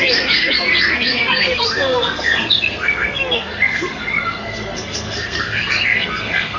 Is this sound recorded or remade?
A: remade